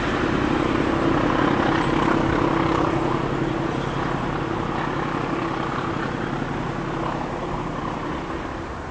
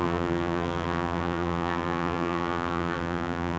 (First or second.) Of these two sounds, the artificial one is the second